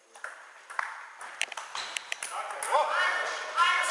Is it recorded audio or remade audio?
remade